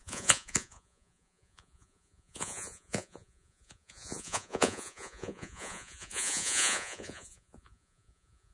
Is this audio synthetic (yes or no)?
yes